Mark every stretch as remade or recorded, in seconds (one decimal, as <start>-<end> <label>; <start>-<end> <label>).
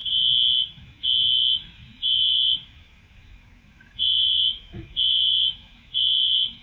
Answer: 0.0-0.7 recorded; 0.7-6.6 remade